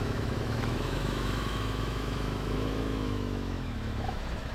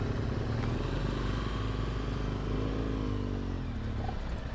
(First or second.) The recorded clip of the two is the second